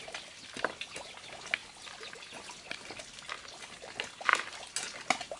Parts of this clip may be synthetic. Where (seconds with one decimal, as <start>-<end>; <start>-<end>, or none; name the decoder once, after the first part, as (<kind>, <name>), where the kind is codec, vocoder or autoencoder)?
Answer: none